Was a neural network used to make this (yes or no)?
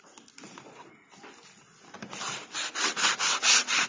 no